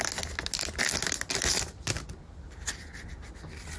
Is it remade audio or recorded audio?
recorded